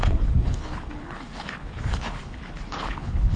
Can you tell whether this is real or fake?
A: fake